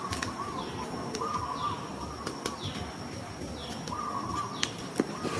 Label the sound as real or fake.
real